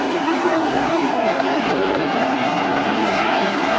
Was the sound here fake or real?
fake